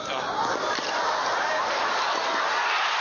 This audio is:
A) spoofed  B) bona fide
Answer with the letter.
B